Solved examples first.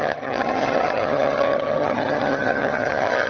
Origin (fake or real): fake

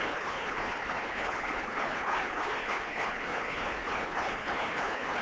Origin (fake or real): fake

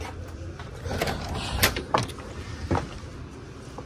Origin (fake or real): real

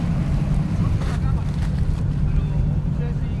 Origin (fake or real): real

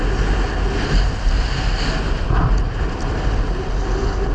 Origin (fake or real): real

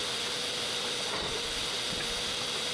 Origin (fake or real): real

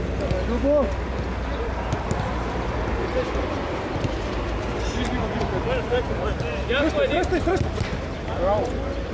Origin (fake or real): real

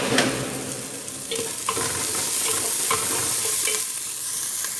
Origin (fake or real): real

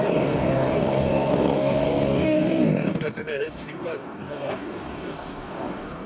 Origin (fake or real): fake